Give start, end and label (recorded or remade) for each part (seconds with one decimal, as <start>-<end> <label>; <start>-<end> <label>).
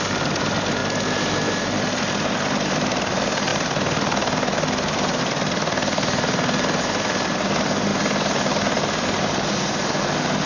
0.0-0.8 remade; 0.8-2.1 recorded; 2.1-7.9 remade; 7.9-8.8 recorded; 8.8-10.5 remade